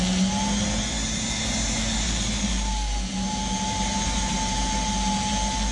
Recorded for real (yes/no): yes